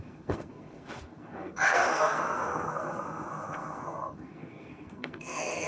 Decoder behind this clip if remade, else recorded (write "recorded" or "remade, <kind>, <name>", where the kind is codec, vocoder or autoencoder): remade, codec, SNAC